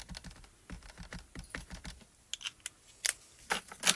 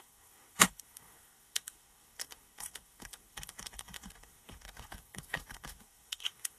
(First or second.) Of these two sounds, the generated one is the second